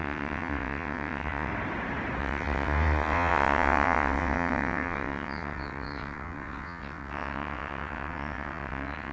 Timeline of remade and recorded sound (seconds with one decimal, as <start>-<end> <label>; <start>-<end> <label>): 0.0-1.5 remade; 1.5-2.2 recorded; 2.2-9.1 remade